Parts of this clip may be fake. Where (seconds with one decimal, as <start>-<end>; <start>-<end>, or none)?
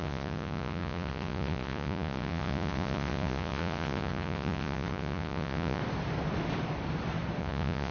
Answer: 0.0-5.8; 7.4-7.9